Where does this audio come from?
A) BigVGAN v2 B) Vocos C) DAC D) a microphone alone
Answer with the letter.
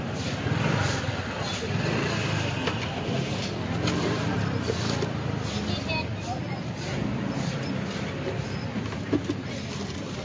D